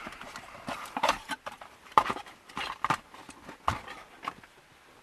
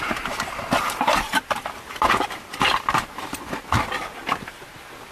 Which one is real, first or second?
second